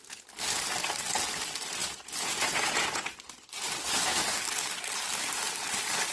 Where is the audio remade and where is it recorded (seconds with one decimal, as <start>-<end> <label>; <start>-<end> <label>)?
0.0-1.8 recorded; 1.8-3.1 remade; 3.1-6.1 recorded